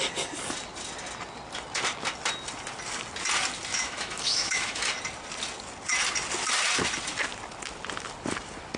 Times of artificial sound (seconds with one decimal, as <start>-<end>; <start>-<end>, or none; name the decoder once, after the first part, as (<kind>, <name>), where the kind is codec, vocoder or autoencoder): 3.7-4.9 (autoencoder, DAC-VAE)